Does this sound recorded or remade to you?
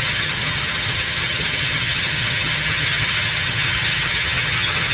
remade